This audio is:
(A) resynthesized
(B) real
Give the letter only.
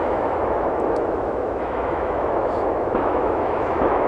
A